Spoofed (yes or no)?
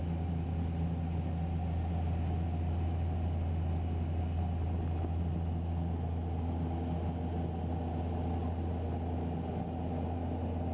no